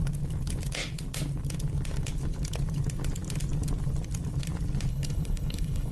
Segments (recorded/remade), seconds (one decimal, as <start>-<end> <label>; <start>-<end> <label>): 0.0-4.9 recorded; 4.9-5.9 remade